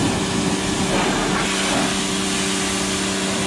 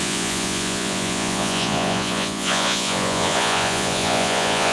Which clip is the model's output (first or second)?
second